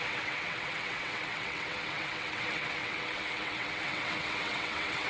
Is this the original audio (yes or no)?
no